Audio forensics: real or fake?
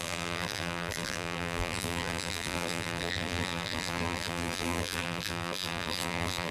fake